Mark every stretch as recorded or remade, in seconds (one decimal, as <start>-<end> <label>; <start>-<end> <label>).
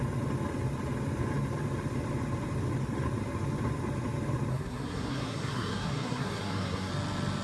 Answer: 0.0-4.5 recorded; 4.5-6.9 remade; 6.9-7.4 recorded